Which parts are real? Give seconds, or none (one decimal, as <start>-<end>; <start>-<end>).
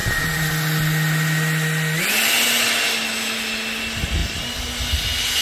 0.0-5.4